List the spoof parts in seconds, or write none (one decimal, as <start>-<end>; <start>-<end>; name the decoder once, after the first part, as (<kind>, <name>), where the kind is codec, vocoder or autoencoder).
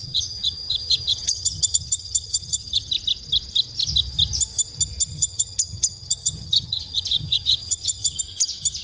0.0-2.9 (vocoder, HiFi-GAN); 5.1-8.2